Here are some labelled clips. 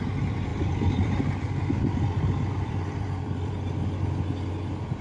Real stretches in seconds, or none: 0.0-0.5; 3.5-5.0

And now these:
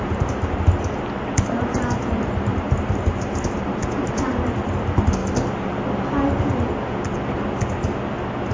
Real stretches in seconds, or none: 0.0-1.3; 1.8-2.5; 4.8-8.5